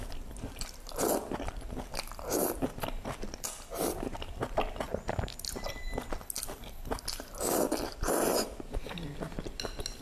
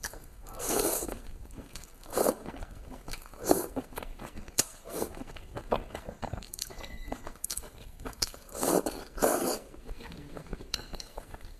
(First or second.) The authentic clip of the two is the first